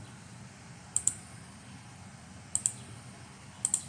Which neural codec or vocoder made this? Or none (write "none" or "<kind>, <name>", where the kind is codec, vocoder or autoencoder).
none